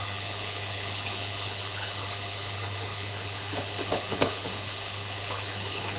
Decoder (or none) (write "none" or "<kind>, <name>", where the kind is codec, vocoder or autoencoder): codec, HILCodec